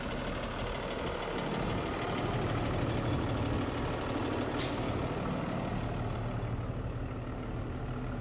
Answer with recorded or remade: recorded